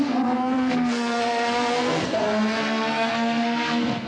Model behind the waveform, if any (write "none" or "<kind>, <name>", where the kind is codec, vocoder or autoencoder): codec, SNAC